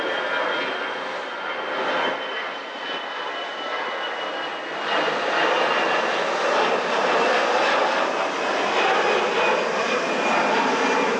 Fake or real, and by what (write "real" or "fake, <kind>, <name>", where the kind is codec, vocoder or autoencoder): real